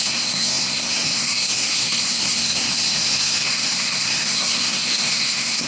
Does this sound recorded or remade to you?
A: remade